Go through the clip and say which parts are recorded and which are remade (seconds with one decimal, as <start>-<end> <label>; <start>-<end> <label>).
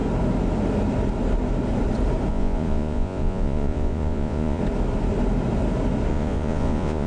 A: 0.0-2.3 recorded; 2.3-4.6 remade; 4.6-6.1 recorded; 6.1-7.1 remade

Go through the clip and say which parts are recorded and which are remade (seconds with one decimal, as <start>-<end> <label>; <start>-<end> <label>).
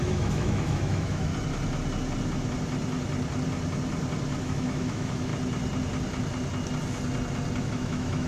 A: 0.0-1.3 remade; 1.3-4.4 recorded; 4.4-5.3 remade; 5.3-7.6 recorded; 7.6-8.3 remade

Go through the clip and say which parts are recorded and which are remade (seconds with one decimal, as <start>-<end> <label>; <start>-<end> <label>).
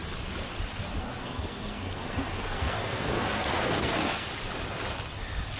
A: 0.0-1.0 recorded; 1.0-4.3 remade; 4.3-5.6 recorded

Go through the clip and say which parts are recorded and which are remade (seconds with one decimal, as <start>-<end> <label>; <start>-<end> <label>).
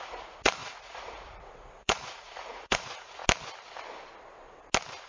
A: 0.0-3.2 remade; 3.2-5.1 recorded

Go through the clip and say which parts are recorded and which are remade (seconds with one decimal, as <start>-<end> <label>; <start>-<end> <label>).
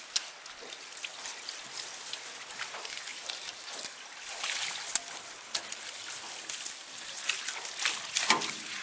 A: 0.0-8.8 recorded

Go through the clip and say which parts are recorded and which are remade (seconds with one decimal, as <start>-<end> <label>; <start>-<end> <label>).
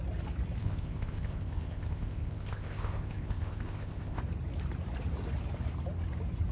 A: 0.0-0.6 recorded; 0.6-4.2 remade; 4.2-6.5 recorded